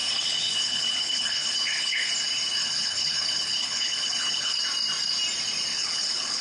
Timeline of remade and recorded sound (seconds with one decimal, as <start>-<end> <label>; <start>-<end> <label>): 0.0-2.1 remade; 2.1-2.6 recorded; 2.6-4.6 remade; 4.6-5.7 recorded; 5.7-6.4 remade